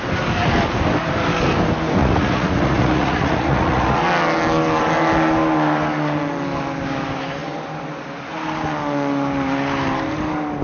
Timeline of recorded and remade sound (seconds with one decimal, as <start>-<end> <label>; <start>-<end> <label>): 0.0-2.0 recorded; 2.0-4.0 remade; 4.0-10.6 recorded